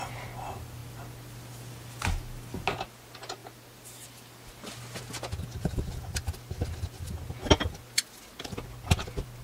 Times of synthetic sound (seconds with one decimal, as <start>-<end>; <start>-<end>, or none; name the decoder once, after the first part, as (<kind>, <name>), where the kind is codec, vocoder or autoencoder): 0.8-1.7 (vocoder, BigVGAN v2); 3.4-5.0